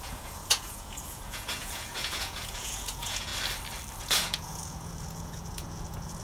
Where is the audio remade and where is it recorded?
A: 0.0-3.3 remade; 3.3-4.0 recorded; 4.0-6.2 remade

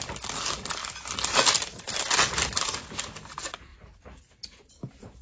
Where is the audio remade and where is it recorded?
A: 0.0-5.2 recorded

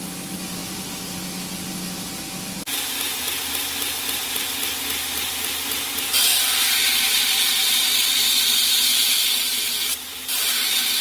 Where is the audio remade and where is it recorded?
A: 0.0-11.0 recorded

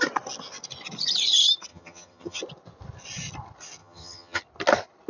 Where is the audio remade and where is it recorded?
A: 0.0-1.7 recorded; 1.7-2.4 remade; 2.4-3.8 recorded; 3.8-4.4 remade; 4.4-5.1 recorded

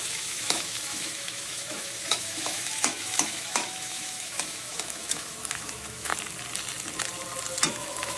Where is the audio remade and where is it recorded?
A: 0.0-6.1 remade; 6.1-7.7 recorded; 7.7-8.2 remade